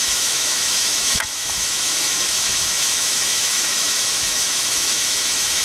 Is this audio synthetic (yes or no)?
yes